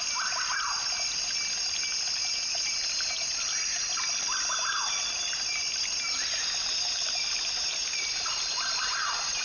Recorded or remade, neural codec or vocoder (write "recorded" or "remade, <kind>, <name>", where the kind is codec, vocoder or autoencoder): recorded